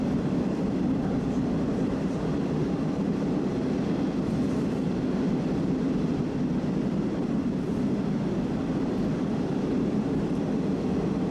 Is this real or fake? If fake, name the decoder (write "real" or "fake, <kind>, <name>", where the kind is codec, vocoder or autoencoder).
fake, vocoder, BigVGAN v2